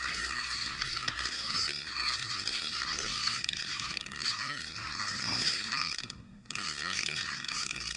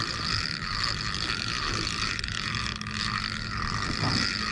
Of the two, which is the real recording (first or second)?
second